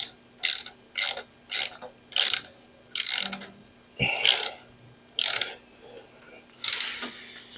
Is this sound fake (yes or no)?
no